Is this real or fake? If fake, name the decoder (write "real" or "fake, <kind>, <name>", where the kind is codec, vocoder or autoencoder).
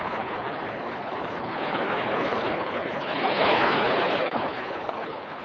fake, codec, HILCodec